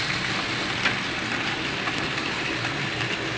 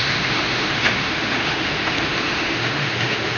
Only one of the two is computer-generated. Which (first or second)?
second